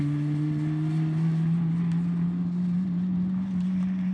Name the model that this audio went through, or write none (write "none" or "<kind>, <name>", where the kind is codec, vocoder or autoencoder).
none